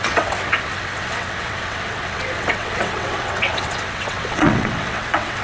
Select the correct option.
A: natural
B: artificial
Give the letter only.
B